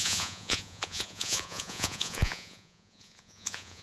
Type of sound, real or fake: fake